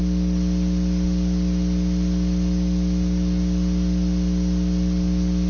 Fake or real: real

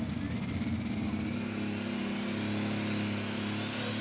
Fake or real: real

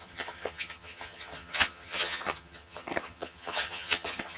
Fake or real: fake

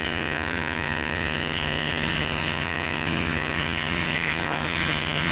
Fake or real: fake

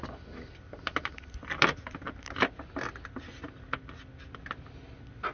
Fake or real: real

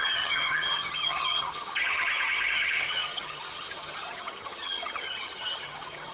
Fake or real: fake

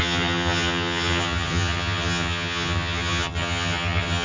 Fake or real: fake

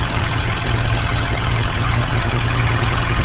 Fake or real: fake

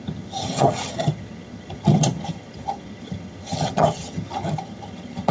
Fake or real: fake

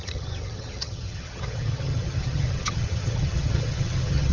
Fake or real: fake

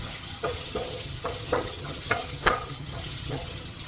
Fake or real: fake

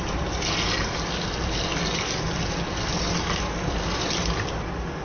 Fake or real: real